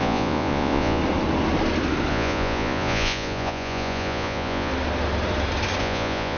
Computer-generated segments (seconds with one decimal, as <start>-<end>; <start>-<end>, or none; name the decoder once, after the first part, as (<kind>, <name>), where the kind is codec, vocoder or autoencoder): 0.0-1.0 (vocoder, Vocos); 2.1-4.7; 5.8-6.4